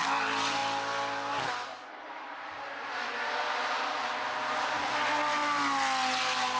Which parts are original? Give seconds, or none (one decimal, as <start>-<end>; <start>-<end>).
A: 0.0-6.6